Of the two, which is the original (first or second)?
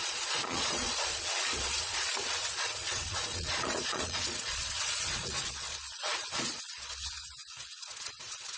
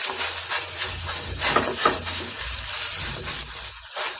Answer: second